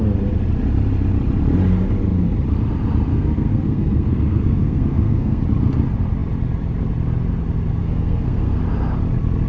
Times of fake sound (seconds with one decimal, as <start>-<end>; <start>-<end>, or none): 3.1-5.4; 7.8-8.6